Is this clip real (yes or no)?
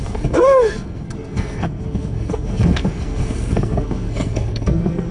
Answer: no